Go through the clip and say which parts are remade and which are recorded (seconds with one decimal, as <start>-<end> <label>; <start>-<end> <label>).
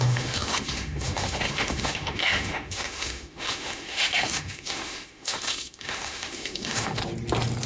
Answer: 0.0-7.0 remade; 7.0-7.7 recorded